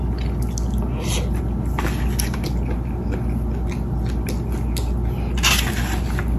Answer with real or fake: real